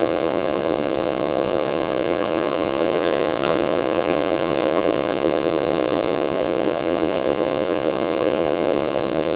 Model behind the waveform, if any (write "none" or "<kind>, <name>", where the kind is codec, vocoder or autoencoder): vocoder, Vocos